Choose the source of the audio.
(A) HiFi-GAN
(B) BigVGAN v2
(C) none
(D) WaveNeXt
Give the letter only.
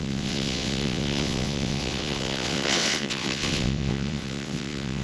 D